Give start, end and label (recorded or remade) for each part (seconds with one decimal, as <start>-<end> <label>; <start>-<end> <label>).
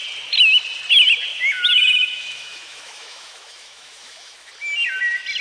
0.0-1.3 recorded; 1.3-4.5 remade; 4.5-5.4 recorded